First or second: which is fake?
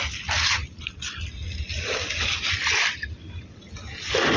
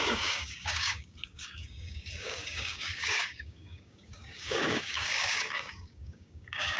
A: second